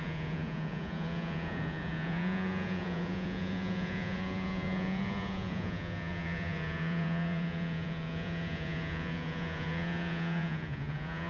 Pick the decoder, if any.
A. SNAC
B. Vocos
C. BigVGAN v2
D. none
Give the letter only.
B